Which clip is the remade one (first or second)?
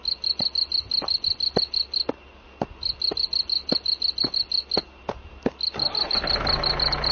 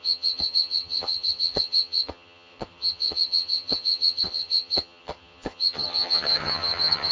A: second